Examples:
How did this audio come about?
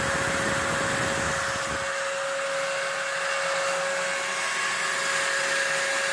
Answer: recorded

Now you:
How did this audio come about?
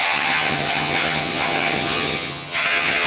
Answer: remade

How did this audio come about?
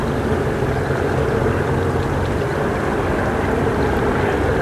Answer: recorded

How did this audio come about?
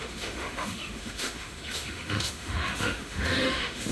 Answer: remade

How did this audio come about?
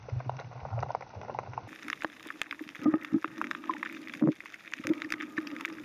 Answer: recorded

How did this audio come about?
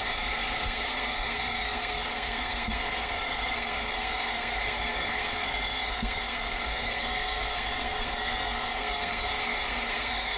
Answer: remade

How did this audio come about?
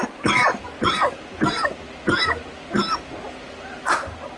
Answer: recorded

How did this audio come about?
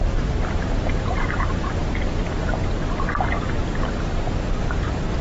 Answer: remade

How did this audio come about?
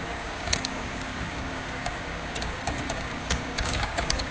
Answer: remade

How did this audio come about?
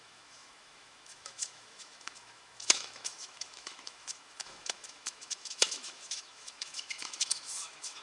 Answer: remade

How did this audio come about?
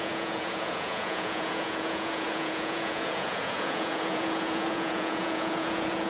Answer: remade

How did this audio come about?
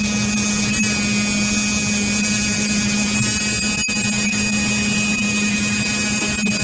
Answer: recorded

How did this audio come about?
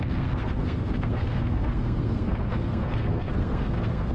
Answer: remade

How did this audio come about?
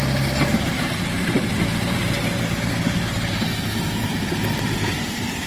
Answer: remade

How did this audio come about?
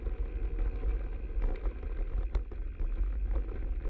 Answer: recorded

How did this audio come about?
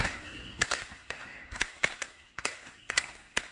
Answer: remade